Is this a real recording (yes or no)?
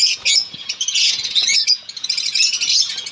no